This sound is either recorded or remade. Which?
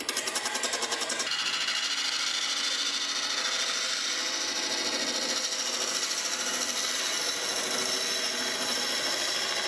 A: recorded